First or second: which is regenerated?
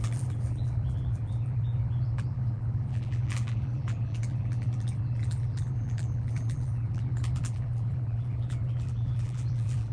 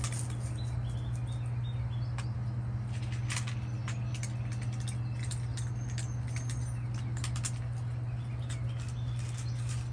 first